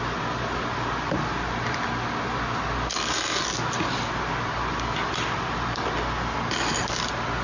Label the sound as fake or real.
real